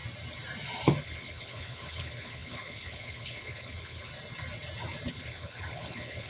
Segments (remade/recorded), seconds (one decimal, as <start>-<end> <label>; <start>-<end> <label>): 0.0-1.0 recorded; 1.0-4.1 remade; 4.1-5.1 recorded; 5.1-6.3 remade